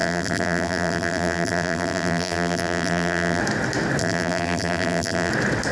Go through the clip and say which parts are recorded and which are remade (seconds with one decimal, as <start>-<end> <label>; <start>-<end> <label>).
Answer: 0.0-3.4 remade; 3.4-4.0 recorded; 4.0-5.3 remade; 5.3-5.7 recorded